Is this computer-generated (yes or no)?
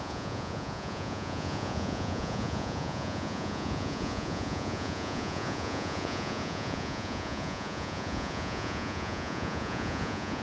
yes